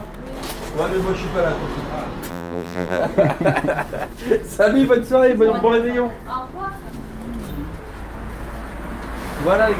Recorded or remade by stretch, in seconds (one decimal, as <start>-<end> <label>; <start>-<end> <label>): 0.0-2.3 recorded; 2.3-3.0 remade; 3.0-9.8 recorded